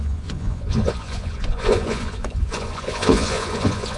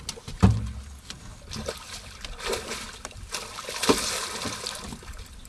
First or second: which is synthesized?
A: first